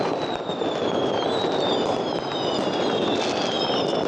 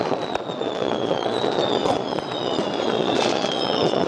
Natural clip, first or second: first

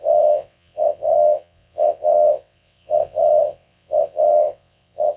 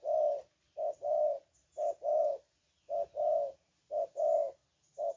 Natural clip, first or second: second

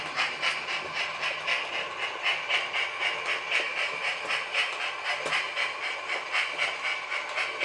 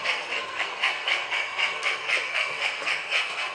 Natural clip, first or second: first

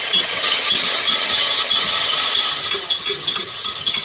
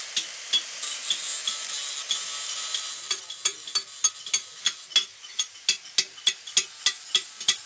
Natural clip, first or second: second